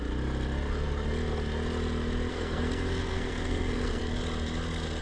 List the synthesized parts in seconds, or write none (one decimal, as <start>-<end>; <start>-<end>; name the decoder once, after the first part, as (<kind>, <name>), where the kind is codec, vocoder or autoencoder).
2.3-4.0 (codec, SNAC)